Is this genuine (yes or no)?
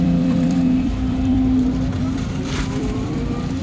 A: no